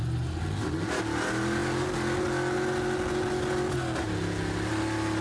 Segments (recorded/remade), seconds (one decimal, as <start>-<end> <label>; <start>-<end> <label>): 0.0-5.2 recorded